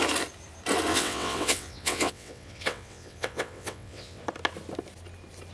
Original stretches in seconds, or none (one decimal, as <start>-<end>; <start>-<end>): 0.0-0.9; 4.2-5.5